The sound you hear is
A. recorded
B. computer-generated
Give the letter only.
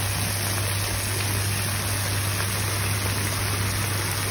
A